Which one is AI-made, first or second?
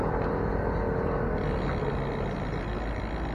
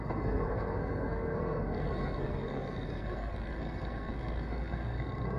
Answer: second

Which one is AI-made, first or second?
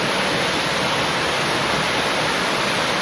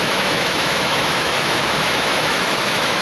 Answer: second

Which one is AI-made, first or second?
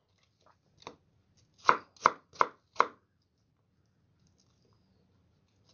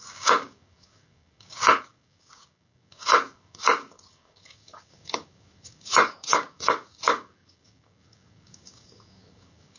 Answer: second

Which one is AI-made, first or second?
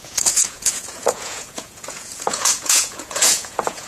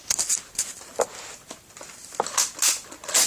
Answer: first